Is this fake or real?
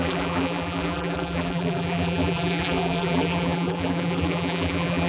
fake